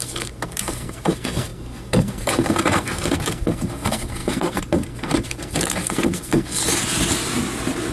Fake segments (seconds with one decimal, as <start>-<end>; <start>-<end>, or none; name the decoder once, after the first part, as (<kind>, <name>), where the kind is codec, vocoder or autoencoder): 0.0-6.6 (codec, SNAC)